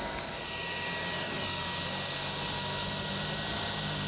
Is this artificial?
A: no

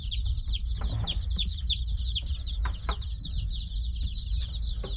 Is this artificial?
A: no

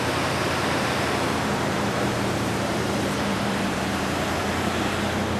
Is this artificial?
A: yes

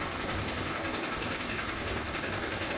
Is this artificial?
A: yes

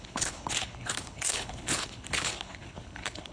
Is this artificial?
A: yes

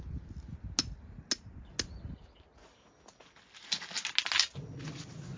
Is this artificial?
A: no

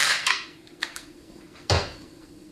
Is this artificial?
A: yes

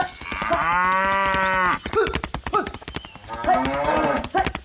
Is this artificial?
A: no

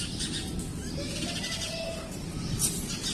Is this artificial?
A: no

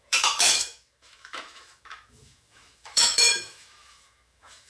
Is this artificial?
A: yes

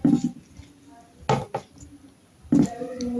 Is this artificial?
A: no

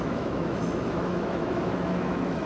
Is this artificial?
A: yes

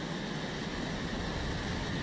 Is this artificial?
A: no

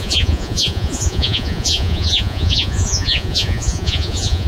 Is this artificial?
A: yes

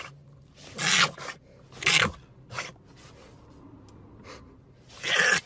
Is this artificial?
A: no